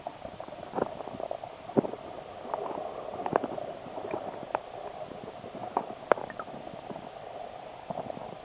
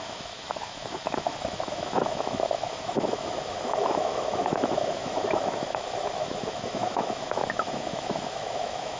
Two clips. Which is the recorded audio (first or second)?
first